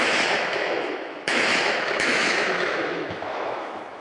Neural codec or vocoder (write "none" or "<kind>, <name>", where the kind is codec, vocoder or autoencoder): autoencoder, DAC-VAE